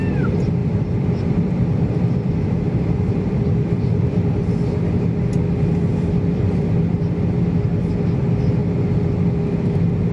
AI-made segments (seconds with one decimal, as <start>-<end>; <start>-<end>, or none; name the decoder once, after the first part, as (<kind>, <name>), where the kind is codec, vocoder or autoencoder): 0.6-4.4 (vocoder, BigVGAN v2); 5.9-6.8